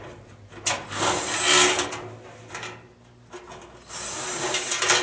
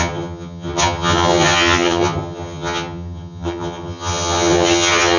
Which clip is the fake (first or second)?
second